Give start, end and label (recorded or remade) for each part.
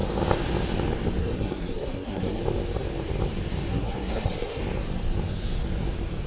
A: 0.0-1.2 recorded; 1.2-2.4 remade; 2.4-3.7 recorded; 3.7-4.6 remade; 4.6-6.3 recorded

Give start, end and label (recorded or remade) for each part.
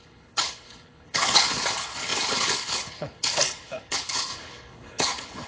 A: 0.0-5.5 remade